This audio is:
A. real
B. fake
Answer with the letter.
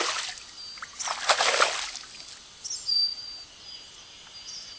A